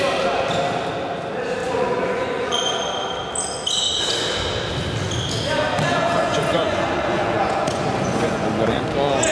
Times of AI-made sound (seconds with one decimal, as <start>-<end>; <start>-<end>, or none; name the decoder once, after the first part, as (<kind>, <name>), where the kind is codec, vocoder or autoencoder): 1.6-2.7 (vocoder, Vocos); 5.9-8.8